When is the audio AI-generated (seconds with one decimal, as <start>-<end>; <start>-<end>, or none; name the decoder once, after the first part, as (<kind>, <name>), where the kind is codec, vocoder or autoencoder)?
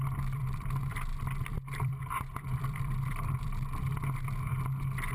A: 0.4-3.5 (vocoder, BigVGAN v2)